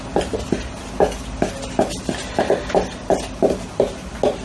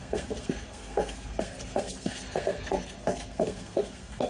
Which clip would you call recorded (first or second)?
first